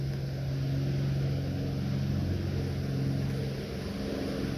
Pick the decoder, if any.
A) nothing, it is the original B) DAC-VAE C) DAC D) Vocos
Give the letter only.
A